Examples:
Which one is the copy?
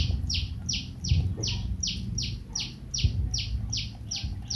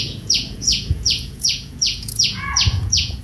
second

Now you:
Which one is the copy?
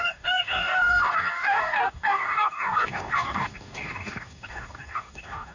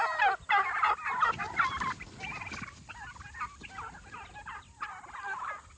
first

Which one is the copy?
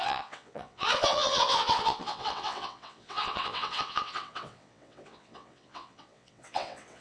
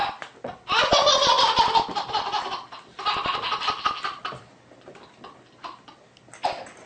first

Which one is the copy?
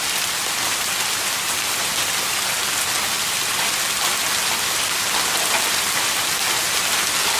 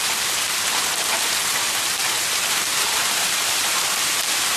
second